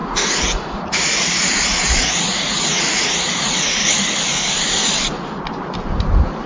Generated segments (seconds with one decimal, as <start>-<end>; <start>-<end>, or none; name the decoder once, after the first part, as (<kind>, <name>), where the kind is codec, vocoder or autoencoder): 0.0-3.9 (vocoder, Vocos)